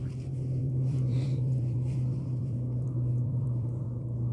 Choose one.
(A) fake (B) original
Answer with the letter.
A